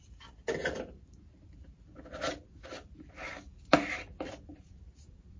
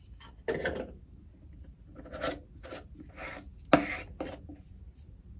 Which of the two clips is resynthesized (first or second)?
first